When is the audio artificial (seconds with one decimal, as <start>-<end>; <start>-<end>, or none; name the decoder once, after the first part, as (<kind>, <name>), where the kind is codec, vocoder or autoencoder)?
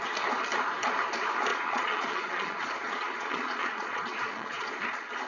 1.5-4.7 (vocoder, Vocos)